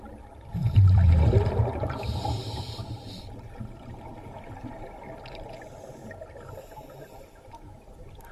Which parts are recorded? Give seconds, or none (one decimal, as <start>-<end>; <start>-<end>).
0.0-0.6; 5.1-6.0; 7.3-8.3